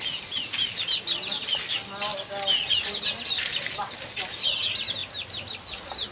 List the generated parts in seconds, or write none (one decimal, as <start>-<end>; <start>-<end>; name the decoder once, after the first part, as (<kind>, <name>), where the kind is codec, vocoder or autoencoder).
none